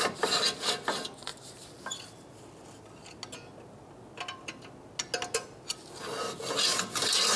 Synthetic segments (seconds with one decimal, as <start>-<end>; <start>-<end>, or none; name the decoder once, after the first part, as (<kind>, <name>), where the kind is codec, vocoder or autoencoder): none

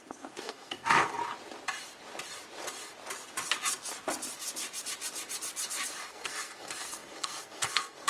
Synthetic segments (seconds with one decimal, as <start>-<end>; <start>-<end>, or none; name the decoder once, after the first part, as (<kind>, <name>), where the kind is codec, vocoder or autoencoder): 0.0-1.2 (codec, SNAC); 6.1-8.1

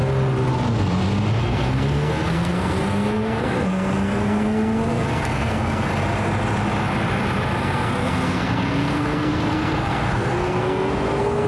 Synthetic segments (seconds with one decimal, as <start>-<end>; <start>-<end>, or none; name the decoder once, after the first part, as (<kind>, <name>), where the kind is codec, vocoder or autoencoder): 1.4-5.9 (codec, SNAC); 7.6-11.5

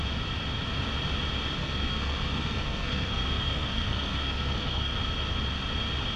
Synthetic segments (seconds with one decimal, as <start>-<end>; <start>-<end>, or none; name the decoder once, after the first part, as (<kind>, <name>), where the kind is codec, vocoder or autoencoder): 1.6-5.0 (codec, SNAC)

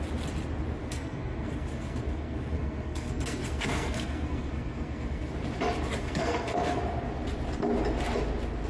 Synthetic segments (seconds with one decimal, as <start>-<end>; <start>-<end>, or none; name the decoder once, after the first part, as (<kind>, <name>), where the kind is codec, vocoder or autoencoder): 0.8-5.3 (codec, SNAC); 6.0-6.8

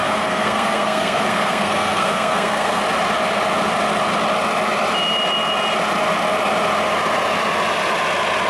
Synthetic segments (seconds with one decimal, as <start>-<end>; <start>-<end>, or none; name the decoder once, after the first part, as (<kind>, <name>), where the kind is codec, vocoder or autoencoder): 0.0-2.8 (codec, SNAC)